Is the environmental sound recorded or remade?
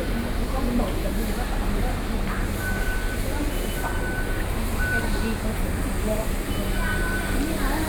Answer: recorded